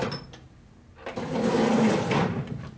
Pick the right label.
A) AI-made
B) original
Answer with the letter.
B